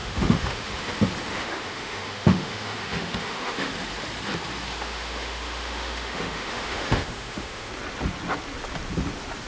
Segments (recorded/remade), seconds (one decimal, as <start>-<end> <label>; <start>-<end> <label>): 0.0-0.9 remade; 0.9-1.3 recorded; 1.3-3.7 remade; 3.7-4.7 recorded; 4.7-7.7 remade; 7.7-9.5 recorded

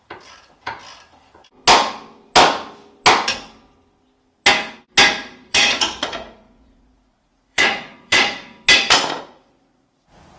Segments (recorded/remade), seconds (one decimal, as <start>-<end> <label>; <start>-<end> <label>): 0.0-0.8 remade; 0.8-5.5 recorded; 5.5-8.5 remade; 8.5-9.2 recorded; 9.2-10.4 remade

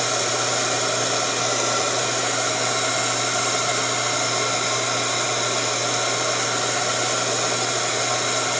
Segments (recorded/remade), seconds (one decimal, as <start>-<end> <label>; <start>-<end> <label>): 0.0-8.6 recorded

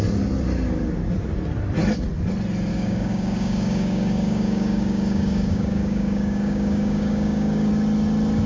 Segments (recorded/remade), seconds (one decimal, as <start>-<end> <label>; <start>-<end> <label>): 0.0-2.7 recorded; 2.7-7.7 remade; 7.7-8.5 recorded

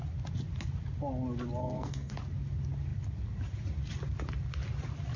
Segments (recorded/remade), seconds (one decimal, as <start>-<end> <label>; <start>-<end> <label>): 0.0-1.6 recorded; 1.6-2.1 remade; 2.1-5.2 recorded

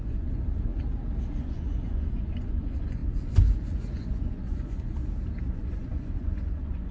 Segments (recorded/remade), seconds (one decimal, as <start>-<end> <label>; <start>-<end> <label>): 0.0-0.7 remade; 0.7-1.3 recorded; 1.3-5.0 remade; 5.0-5.5 recorded; 5.5-6.9 remade

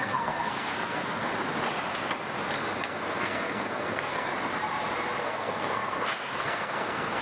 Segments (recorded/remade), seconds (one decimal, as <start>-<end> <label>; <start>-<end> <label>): 0.0-1.3 remade; 1.3-2.8 recorded; 2.8-4.3 remade; 4.3-5.2 recorded; 5.2-7.2 remade

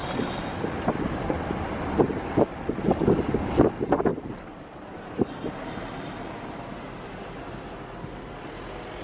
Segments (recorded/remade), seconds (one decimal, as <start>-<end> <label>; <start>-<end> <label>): 0.0-4.1 recorded; 4.1-7.1 remade; 7.1-9.0 recorded